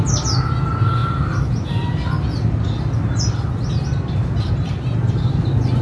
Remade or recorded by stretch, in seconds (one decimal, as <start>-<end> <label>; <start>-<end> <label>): 0.0-5.8 recorded